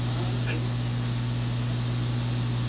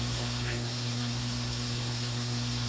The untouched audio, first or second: first